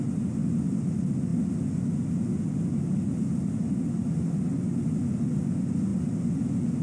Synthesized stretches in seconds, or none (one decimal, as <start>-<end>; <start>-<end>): none